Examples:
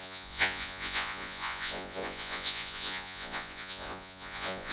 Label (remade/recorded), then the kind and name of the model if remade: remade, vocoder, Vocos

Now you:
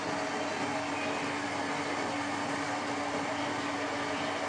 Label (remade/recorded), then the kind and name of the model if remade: recorded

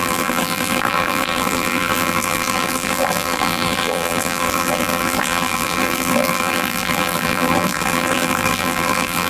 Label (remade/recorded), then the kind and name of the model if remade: remade, vocoder, BigVGAN v2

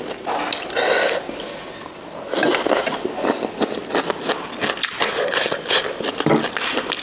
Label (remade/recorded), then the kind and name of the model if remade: recorded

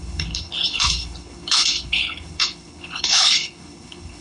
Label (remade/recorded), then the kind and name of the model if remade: remade, codec, HILCodec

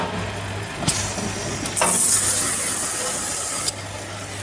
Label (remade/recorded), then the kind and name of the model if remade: recorded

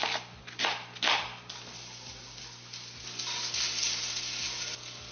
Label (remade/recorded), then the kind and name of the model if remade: recorded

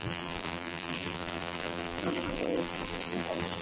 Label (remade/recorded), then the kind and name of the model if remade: remade, vocoder, BigVGAN v2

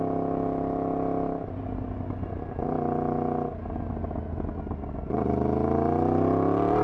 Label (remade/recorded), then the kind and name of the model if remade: recorded